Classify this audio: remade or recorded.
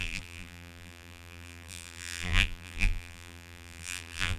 remade